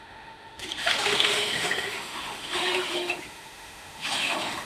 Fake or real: fake